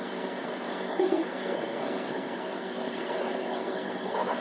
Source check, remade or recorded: remade